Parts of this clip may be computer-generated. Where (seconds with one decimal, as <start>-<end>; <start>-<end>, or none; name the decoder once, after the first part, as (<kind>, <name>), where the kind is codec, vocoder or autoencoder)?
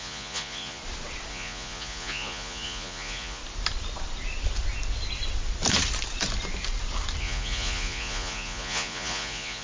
0.0-0.8 (vocoder, Vocos); 1.3-3.4; 7.2-9.6